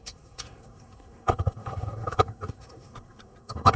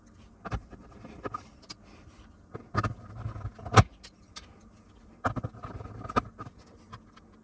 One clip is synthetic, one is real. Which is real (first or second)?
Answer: second